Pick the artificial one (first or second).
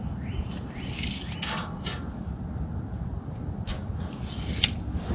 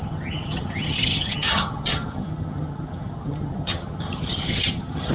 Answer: second